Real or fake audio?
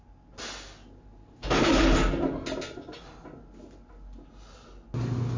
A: real